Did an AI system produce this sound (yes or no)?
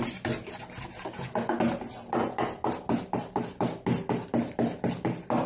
no